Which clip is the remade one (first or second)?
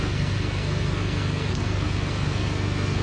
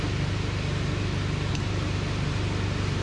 first